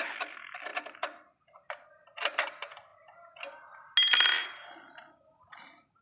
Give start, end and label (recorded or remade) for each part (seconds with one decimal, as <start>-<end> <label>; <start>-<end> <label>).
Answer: 0.0-6.0 recorded